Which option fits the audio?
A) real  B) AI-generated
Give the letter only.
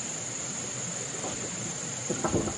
A